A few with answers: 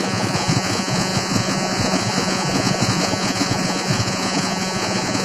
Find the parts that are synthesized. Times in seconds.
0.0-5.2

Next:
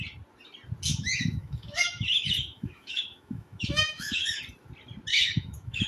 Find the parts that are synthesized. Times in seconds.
0.9-4.4; 5.1-5.9